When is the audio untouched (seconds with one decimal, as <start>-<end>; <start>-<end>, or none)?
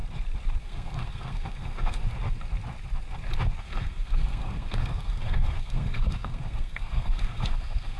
0.0-0.6; 2.0-3.6